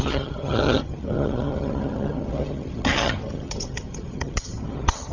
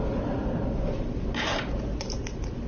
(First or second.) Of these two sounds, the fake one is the first